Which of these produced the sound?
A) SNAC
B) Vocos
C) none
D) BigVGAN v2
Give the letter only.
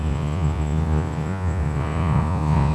B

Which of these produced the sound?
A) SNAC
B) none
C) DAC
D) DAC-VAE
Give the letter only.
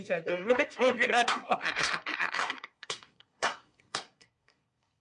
A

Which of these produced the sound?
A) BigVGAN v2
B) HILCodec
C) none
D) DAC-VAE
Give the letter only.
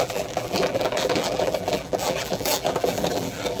A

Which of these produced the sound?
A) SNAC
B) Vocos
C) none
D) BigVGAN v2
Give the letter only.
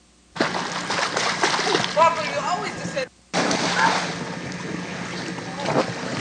C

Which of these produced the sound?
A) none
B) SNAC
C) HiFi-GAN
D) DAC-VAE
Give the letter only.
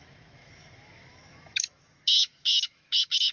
D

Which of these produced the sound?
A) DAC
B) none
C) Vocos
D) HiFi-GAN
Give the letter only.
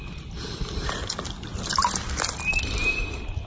B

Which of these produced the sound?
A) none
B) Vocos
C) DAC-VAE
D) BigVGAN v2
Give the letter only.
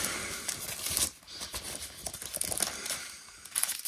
A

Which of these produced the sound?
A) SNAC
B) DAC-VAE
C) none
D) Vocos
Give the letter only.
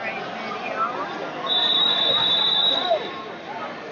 C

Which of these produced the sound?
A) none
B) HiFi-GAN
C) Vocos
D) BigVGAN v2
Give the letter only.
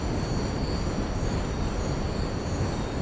A